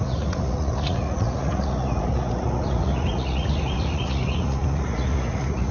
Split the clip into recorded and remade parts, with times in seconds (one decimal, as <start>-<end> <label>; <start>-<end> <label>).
0.0-5.7 remade